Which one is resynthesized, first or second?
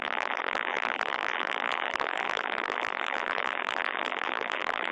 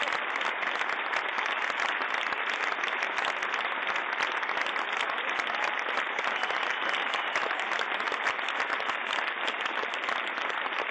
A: first